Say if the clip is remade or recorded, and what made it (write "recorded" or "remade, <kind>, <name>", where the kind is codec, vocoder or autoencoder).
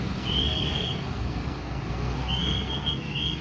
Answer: remade, codec, SNAC